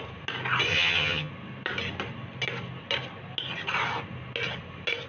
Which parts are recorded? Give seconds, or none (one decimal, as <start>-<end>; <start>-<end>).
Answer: 0.0-0.7; 1.3-5.1